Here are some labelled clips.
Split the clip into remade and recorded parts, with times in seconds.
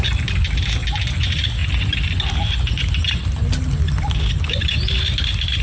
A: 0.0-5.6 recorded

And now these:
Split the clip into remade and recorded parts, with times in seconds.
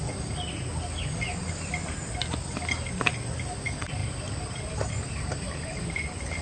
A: 0.0-4.0 recorded; 4.0-6.0 remade; 6.0-6.4 recorded